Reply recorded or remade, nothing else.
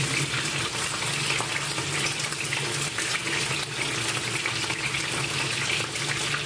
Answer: recorded